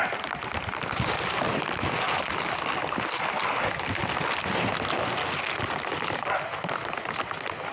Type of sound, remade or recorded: recorded